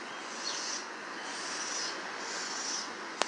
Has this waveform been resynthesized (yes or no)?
yes